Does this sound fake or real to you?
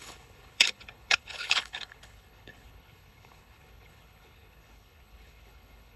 fake